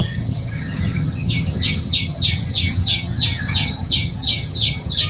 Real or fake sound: fake